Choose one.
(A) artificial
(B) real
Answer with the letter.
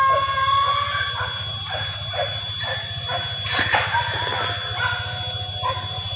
B